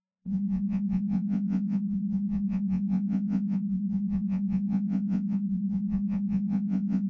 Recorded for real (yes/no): no